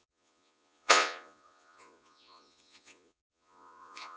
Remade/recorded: remade